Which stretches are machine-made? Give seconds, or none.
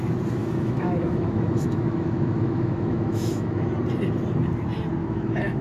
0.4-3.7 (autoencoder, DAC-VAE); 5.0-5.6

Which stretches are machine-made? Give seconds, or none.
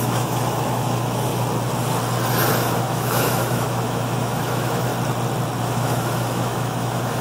0.0-1.3 (autoencoder, DAC-VAE); 2.5-4.9; 5.6-7.2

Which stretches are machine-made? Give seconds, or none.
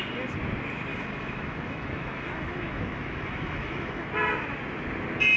0.9-4.1 (autoencoder, DAC-VAE)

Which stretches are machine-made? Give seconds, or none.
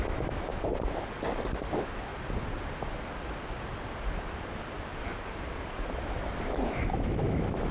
0.0-0.5 (autoencoder, DAC-VAE); 1.7-2.1; 6.4-7.7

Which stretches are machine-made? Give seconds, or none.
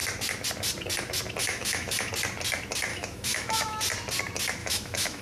1.4-2.1 (autoencoder, DAC-VAE); 2.9-3.8; 4.6-5.2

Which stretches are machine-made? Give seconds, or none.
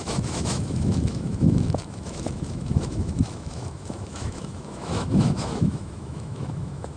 0.0-7.0 (autoencoder, DAC-VAE)